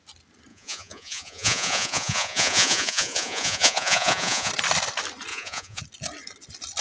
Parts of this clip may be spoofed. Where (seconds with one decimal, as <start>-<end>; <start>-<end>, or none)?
0.5-4.5; 5.3-5.8